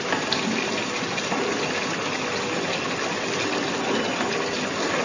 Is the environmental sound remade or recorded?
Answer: recorded